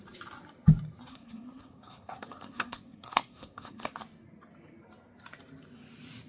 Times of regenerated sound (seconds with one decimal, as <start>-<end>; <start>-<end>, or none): 1.1-3.9